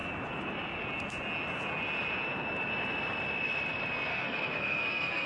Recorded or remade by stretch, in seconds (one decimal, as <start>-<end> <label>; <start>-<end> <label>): 0.0-4.1 recorded; 4.1-5.3 remade

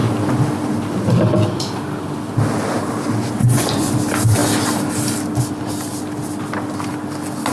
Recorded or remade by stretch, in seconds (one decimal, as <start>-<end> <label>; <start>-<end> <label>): 0.0-3.4 recorded; 3.4-3.9 remade; 3.9-7.5 recorded

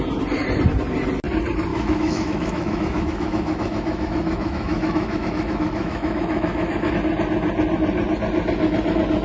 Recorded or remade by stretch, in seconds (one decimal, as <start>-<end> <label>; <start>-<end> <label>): 0.0-1.7 recorded; 1.7-6.9 remade; 6.9-9.2 recorded